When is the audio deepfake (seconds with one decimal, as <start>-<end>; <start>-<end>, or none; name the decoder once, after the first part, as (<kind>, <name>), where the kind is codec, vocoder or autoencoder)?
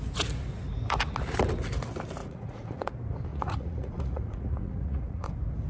2.2-2.9 (vocoder, Vocos); 3.3-5.3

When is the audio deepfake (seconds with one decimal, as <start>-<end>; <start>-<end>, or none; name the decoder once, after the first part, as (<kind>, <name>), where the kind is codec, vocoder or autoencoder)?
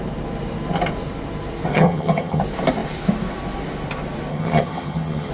1.7-2.4 (vocoder, HiFi-GAN); 4.3-5.3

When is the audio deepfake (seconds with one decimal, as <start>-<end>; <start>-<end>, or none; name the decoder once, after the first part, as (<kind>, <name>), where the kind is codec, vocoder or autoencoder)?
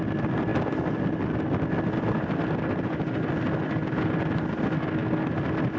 none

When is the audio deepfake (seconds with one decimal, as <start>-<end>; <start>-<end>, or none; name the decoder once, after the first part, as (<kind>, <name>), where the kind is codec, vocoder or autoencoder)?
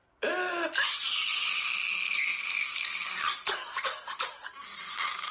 none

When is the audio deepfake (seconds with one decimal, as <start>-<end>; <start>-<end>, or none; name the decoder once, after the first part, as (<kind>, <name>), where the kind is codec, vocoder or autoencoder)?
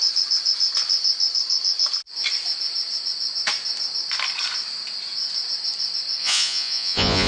6.2-7.3 (vocoder, Vocos)